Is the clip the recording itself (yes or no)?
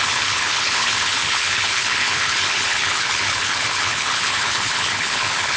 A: no